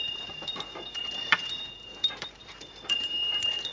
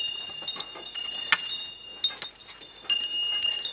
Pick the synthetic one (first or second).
first